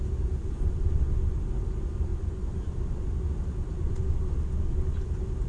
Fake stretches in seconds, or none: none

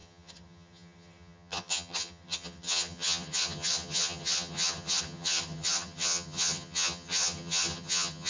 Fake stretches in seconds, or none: 0.0-8.3 (vocoder, HiFi-GAN)

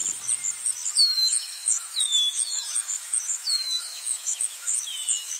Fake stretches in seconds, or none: 0.9-5.4 (autoencoder, DAC-VAE)